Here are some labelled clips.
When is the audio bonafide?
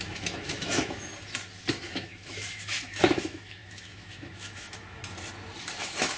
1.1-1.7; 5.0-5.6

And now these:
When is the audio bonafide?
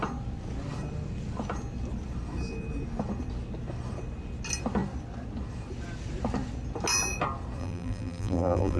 0.0-7.6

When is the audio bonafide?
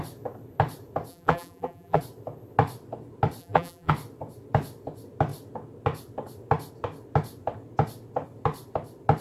0.0-1.1; 2.0-3.4; 3.9-9.2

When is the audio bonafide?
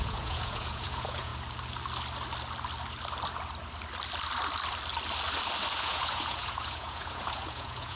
1.3-5.7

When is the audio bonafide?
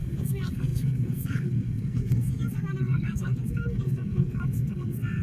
none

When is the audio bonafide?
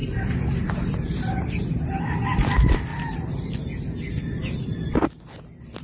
2.0-4.4; 4.9-5.8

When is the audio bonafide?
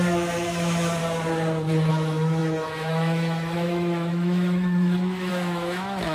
1.0-1.9